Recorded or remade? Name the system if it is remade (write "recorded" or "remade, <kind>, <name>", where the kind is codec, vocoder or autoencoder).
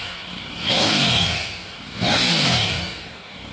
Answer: remade, codec, DAC